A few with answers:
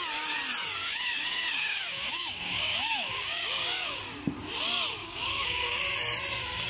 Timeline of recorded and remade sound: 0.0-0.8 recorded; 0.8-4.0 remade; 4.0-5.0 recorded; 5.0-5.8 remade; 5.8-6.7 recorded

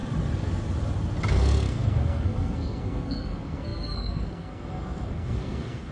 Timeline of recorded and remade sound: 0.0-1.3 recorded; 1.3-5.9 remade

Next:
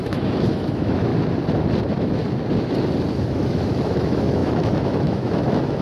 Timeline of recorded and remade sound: 0.0-1.1 remade; 1.1-1.8 recorded; 1.8-2.2 remade; 2.2-3.1 recorded; 3.1-5.8 remade

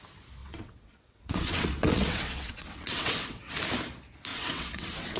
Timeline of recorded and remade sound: 0.0-0.4 recorded; 0.4-3.5 remade; 3.5-4.3 recorded; 4.3-5.2 remade